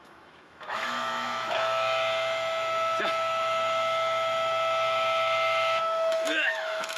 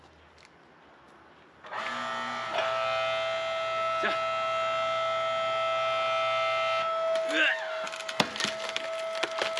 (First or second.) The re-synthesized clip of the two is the first